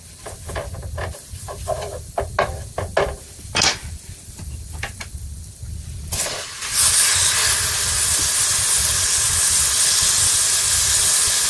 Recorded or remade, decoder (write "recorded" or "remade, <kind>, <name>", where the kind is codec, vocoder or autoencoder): recorded